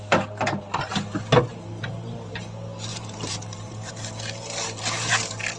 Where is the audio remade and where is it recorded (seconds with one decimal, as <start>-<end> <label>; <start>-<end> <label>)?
0.0-2.9 recorded; 2.9-3.9 remade; 3.9-5.6 recorded